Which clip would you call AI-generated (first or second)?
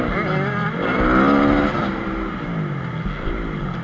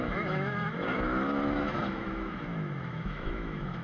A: second